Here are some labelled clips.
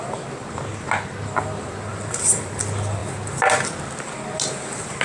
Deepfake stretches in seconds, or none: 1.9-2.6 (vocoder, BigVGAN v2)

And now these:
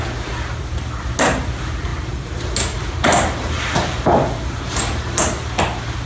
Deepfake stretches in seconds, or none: none

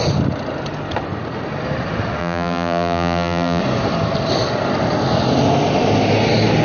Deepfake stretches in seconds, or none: 2.2-3.6 (vocoder, BigVGAN v2)

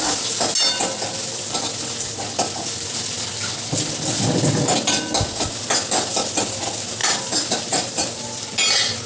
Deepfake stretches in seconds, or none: 7.0-8.2 (vocoder, BigVGAN v2)